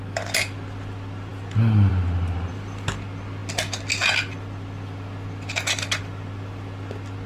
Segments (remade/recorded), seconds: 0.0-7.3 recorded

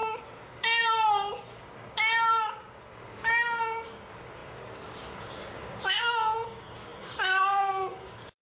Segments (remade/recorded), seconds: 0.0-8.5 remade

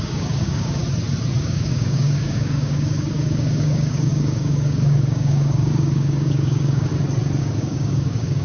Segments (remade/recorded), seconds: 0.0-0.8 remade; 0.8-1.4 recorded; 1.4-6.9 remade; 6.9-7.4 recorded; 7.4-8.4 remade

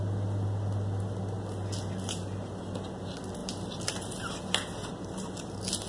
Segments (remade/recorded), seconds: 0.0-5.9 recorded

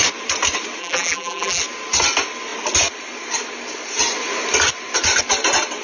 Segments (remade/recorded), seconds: 0.0-0.8 recorded; 0.8-1.6 remade; 1.6-5.8 recorded